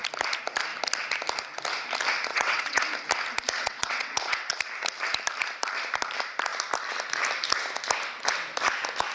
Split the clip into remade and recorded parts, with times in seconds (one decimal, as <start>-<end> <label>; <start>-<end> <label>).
0.0-2.3 recorded; 2.3-2.8 remade; 2.8-3.6 recorded; 3.6-4.5 remade; 4.5-9.1 recorded